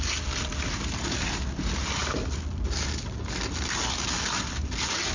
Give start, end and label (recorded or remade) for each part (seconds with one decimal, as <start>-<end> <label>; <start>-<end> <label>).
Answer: 0.0-2.0 recorded; 2.0-4.1 remade; 4.1-5.1 recorded